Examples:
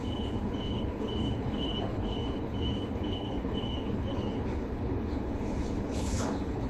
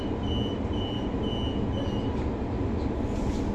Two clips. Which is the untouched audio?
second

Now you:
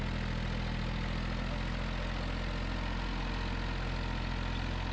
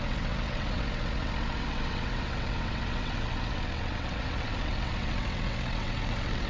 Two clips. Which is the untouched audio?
first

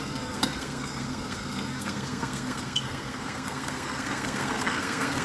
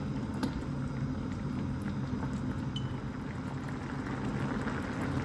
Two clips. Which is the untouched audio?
second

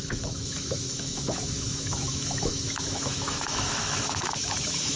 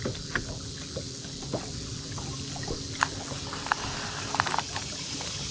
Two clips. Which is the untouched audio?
second